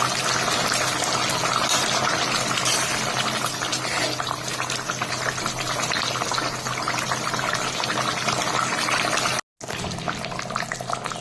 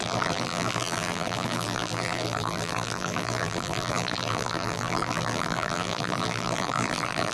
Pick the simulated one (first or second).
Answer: second